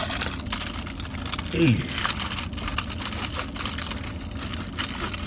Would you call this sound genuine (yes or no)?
yes